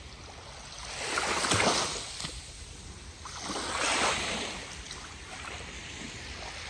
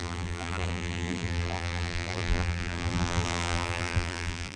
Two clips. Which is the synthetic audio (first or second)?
second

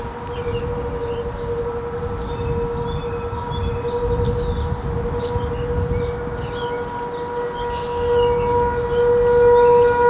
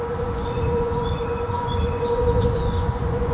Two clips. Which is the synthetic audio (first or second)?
second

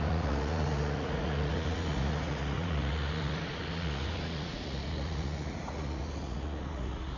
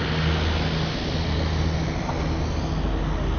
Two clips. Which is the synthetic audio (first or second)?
first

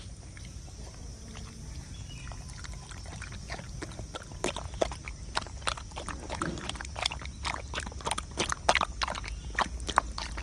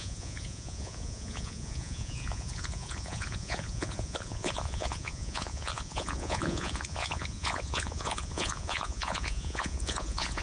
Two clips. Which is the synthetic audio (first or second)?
second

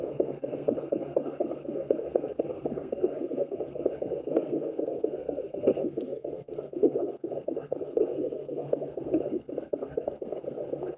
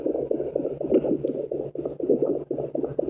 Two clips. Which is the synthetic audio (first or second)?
first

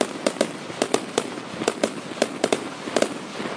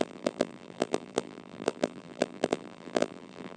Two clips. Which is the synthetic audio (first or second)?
second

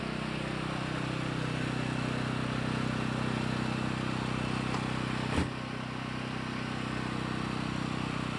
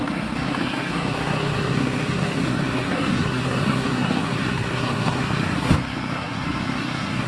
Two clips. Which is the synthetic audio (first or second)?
second